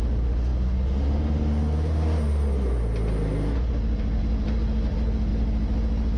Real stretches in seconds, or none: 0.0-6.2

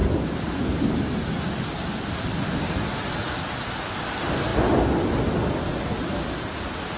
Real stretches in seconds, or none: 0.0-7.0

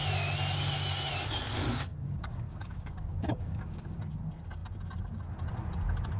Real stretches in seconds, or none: 0.0-1.9; 4.0-6.2